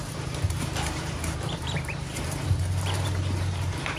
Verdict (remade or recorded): remade